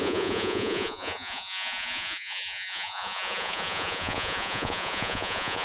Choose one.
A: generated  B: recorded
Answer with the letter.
A